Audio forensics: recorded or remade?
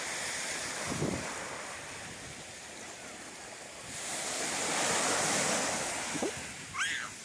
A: recorded